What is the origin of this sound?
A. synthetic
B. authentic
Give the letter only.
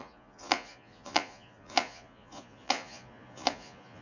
A